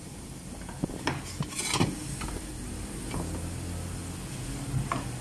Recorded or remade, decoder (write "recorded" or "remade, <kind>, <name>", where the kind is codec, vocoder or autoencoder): recorded